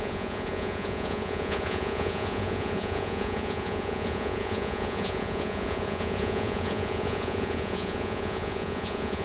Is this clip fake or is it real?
fake